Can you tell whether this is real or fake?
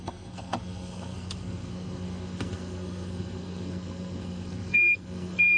fake